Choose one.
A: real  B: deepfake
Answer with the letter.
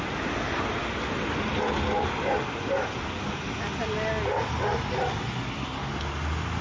A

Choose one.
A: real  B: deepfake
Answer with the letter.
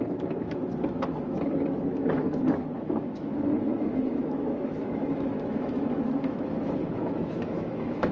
B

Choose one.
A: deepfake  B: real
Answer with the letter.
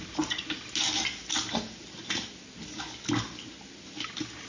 B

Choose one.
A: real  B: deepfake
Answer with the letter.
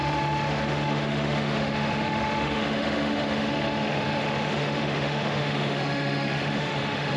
B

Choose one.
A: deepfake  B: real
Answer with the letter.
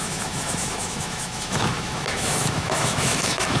A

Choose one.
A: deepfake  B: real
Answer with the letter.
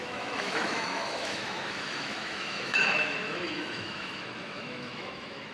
A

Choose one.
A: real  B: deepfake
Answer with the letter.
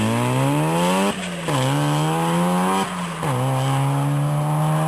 A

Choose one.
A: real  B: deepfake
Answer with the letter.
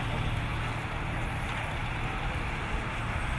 A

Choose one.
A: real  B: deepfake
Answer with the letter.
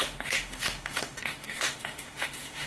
B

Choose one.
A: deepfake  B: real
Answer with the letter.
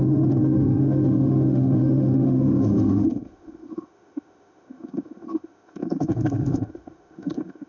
A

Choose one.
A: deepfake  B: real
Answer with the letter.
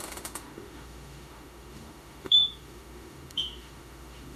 A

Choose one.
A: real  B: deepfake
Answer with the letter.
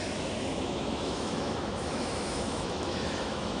B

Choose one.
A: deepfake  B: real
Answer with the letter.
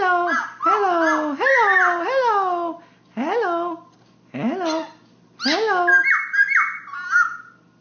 B